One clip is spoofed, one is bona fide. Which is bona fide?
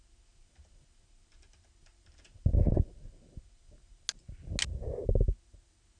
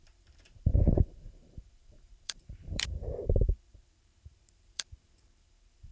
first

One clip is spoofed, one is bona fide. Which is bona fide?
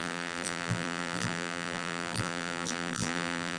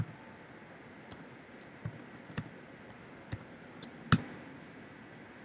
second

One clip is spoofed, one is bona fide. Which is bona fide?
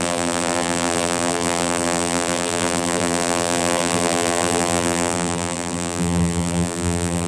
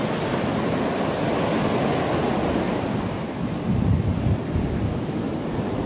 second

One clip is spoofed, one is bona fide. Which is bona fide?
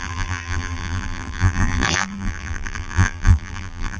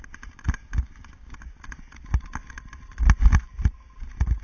second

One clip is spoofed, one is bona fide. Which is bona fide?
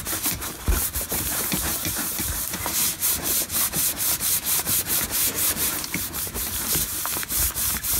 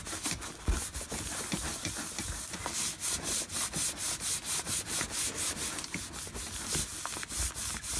second